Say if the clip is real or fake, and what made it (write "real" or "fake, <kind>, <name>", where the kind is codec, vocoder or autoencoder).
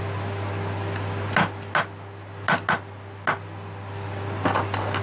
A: real